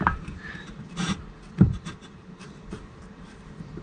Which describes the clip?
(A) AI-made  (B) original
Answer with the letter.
A